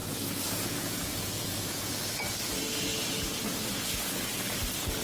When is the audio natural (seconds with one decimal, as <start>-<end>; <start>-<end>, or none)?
2.0-5.0